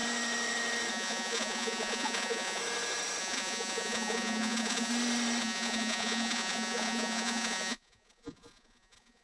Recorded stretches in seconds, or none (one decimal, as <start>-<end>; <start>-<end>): 0.0-0.9; 2.6-3.2; 4.9-5.4